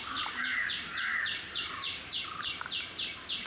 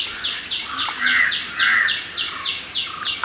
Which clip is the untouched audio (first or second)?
second